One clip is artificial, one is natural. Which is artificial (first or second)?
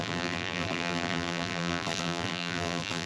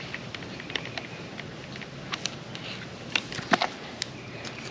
first